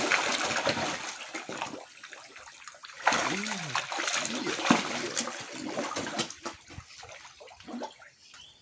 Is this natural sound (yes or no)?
yes